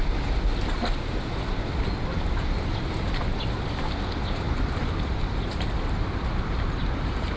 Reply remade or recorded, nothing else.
recorded